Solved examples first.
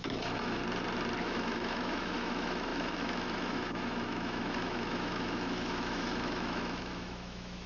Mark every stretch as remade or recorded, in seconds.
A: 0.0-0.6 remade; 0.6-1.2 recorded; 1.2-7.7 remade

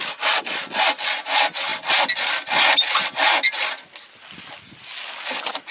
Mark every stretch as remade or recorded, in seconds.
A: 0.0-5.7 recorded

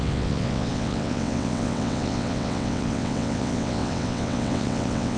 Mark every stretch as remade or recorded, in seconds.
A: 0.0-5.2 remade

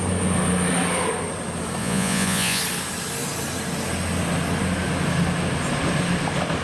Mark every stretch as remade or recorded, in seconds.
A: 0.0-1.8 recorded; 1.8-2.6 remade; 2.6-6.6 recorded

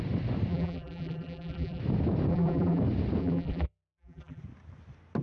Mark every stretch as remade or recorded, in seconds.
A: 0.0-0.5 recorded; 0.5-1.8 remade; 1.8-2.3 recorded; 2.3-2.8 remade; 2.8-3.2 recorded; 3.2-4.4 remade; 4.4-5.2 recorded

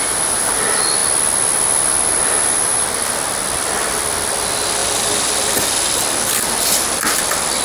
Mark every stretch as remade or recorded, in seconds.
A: 0.0-4.8 recorded; 4.8-7.0 remade; 7.0-7.6 recorded

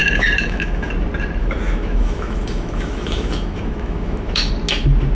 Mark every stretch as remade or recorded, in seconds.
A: 0.0-0.9 remade; 0.9-1.4 recorded; 1.4-4.5 remade; 4.5-5.1 recorded